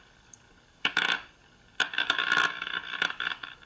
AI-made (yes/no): yes